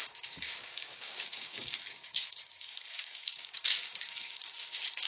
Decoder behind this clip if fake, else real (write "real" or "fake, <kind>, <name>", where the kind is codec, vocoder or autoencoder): fake, codec, DAC